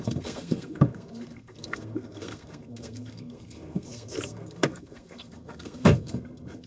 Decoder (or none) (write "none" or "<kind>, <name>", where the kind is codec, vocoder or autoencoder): codec, SNAC